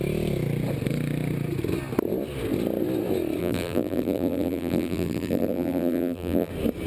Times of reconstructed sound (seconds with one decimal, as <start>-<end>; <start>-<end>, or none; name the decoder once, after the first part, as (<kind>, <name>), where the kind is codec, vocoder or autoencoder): 3.4-6.5 (vocoder, BigVGAN v2)